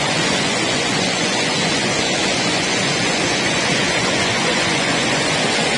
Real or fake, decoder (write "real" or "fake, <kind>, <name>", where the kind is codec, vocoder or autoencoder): fake, vocoder, Vocos